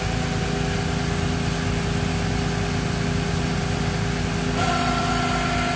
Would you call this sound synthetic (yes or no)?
no